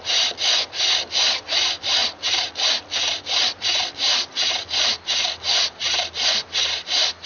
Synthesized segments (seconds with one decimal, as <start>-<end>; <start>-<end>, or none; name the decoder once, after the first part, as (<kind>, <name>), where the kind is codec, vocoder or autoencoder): none